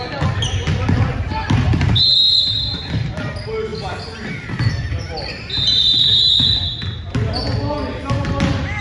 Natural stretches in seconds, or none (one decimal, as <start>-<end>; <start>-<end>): 0.0-8.8